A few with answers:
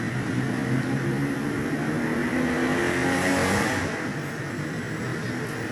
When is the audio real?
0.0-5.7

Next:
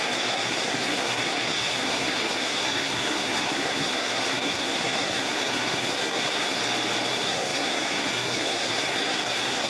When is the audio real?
6.6-7.1

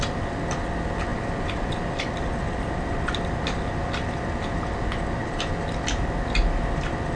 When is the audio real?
0.0-1.1; 3.4-7.2

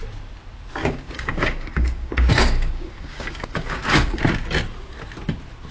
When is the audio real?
0.0-0.8; 4.2-5.7